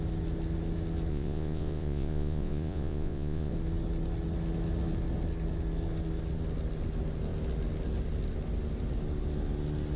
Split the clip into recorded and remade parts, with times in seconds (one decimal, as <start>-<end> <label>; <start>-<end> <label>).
0.0-1.1 recorded; 1.1-3.5 remade; 3.5-10.0 recorded